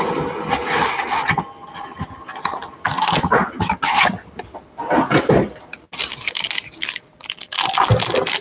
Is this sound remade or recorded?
recorded